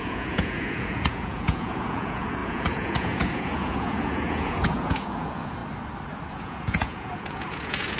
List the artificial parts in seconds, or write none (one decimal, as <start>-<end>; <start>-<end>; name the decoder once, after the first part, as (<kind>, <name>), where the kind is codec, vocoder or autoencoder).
0.0-5.6 (vocoder, Vocos); 6.3-8.0